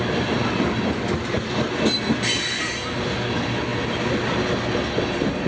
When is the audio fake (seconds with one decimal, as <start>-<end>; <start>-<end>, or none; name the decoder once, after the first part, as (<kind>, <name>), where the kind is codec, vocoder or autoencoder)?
none